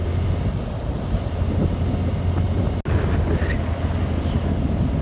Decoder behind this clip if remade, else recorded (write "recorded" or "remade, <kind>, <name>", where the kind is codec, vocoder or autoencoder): recorded